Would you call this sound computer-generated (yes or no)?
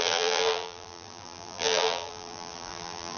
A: yes